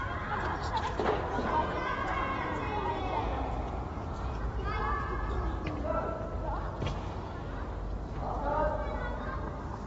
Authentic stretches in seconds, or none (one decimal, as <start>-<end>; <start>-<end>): 0.0-1.4; 4.8-9.9